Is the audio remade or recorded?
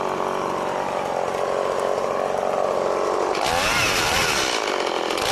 recorded